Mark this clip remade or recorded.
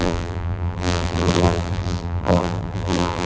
remade